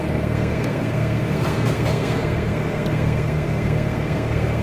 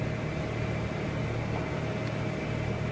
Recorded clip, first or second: second